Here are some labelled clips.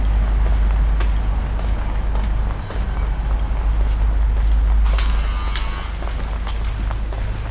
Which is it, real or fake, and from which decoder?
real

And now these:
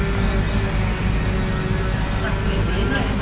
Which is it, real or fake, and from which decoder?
real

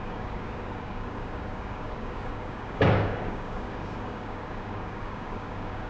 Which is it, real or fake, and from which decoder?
fake, codec, DAC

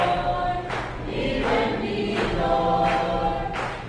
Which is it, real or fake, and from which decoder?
real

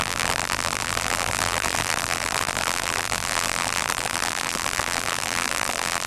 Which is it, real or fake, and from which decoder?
fake, vocoder, BigVGAN v2